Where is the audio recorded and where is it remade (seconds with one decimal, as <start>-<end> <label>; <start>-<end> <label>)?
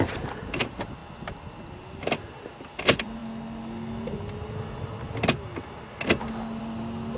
0.0-1.0 remade; 1.0-1.7 recorded; 1.7-3.2 remade; 3.2-6.6 recorded; 6.6-7.2 remade